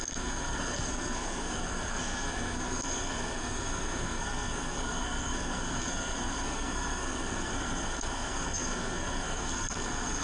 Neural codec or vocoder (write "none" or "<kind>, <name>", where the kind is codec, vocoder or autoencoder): codec, SNAC